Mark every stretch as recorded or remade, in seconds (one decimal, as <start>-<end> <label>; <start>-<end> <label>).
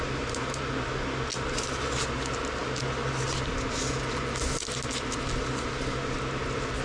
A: 0.0-6.8 recorded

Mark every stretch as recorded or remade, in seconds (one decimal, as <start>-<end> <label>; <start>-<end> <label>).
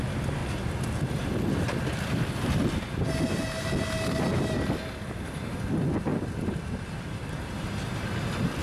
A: 0.0-6.1 recorded; 6.1-8.0 remade; 8.0-8.6 recorded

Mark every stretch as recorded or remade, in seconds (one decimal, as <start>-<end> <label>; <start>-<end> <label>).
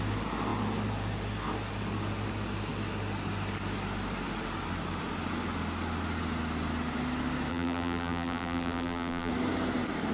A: 0.0-7.5 recorded; 7.5-9.3 remade; 9.3-10.1 recorded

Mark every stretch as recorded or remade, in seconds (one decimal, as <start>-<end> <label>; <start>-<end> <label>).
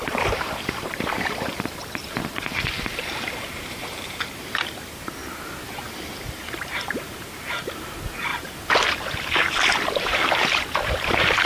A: 0.0-5.2 remade; 5.2-5.9 recorded; 5.9-8.3 remade; 8.3-8.9 recorded; 8.9-11.5 remade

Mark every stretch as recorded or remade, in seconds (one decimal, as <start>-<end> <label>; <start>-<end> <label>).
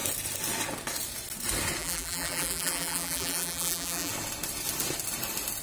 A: 0.0-1.8 recorded; 1.8-4.1 remade; 4.1-5.6 recorded